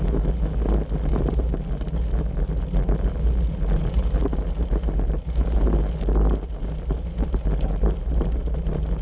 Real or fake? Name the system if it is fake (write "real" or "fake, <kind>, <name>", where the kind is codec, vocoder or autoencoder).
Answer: real